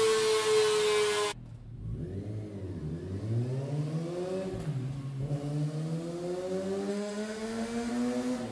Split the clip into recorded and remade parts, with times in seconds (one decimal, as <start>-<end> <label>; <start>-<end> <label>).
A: 0.0-6.9 recorded; 6.9-7.9 remade; 7.9-8.5 recorded